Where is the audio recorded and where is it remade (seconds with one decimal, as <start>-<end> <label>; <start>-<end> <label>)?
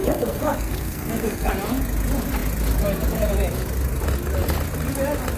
0.0-1.5 remade; 1.5-5.4 recorded